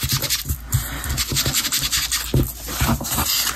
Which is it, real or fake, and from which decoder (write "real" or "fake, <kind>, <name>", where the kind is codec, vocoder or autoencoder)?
real